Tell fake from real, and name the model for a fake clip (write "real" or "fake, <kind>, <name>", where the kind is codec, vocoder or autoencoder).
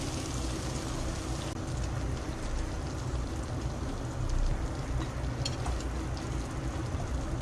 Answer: real